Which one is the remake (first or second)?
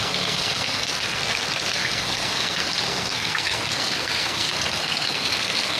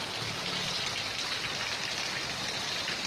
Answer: first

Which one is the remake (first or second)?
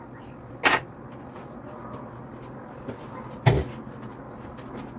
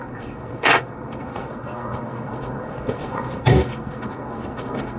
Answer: second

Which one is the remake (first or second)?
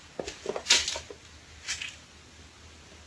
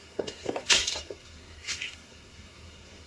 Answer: second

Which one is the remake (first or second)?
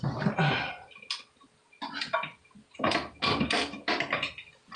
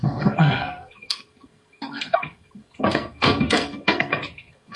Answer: second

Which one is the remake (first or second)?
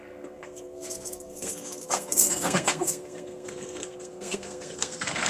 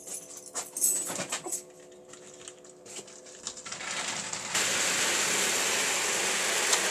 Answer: first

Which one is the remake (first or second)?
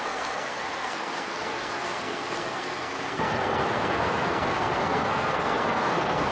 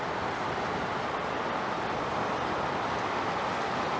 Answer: first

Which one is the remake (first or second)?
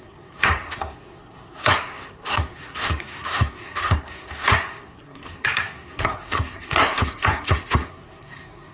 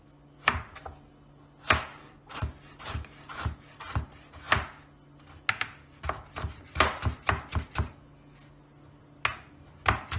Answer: first